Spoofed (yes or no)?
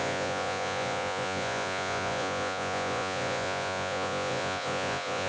yes